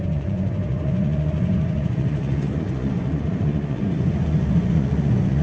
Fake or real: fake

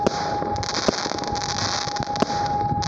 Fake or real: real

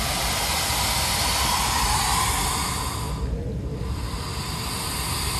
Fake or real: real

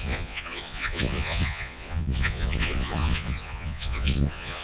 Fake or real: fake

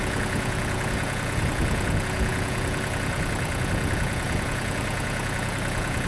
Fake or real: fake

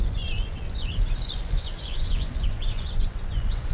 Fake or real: fake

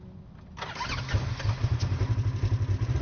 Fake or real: real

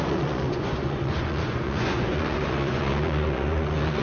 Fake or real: fake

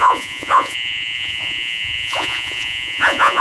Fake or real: fake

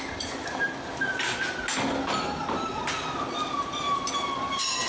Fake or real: real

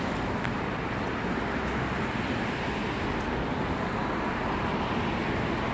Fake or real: real